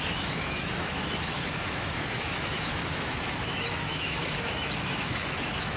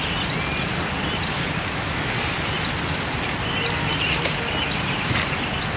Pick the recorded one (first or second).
second